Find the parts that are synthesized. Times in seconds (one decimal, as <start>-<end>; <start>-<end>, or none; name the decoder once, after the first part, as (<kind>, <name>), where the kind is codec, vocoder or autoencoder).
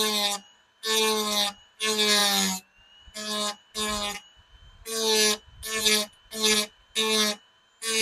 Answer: none